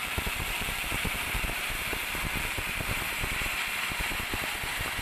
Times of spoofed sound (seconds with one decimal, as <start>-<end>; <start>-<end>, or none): 0.0-3.0